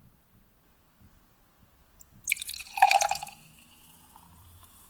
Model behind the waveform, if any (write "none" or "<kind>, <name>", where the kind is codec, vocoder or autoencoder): vocoder, Vocos